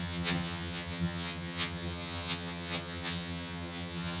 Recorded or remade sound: remade